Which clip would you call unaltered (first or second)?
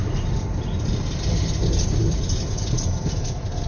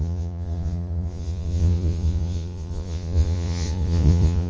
first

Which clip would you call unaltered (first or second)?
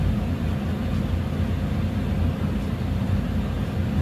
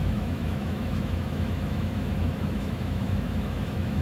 first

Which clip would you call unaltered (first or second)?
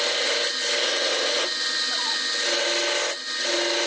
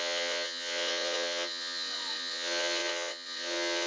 first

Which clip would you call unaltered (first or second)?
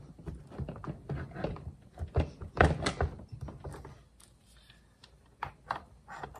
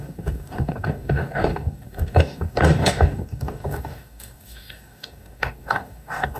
first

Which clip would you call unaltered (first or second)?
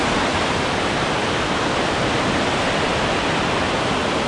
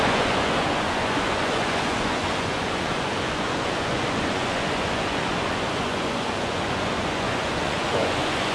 first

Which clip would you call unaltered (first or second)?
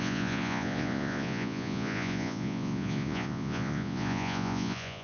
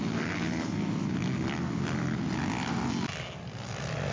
second